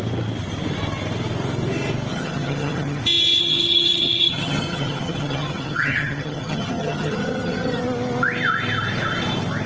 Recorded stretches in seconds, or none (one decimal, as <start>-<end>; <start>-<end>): 0.0-2.1; 3.0-3.4; 7.8-9.7